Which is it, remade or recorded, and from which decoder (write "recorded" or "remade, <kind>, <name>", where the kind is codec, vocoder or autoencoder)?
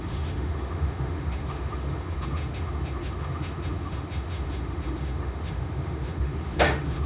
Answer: remade, autoencoder, DAC-VAE